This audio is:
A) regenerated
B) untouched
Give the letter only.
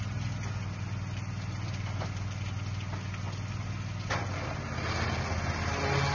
B